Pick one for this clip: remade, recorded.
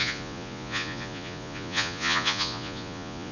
remade